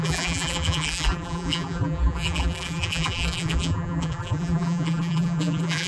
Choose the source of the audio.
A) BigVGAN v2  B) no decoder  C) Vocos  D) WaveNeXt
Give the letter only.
A